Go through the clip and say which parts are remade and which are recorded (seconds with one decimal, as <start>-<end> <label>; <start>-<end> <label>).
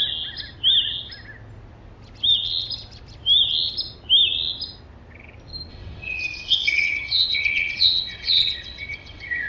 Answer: 0.0-5.7 recorded; 5.7-9.5 remade